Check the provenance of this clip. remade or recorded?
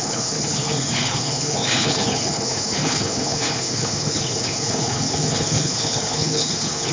remade